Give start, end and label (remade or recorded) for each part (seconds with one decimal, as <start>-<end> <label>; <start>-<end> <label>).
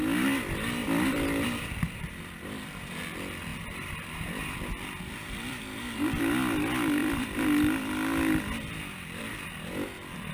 0.0-0.8 recorded; 0.8-2.1 remade; 2.1-3.5 recorded; 3.5-6.2 remade; 6.2-7.0 recorded; 7.0-9.2 remade; 9.2-10.3 recorded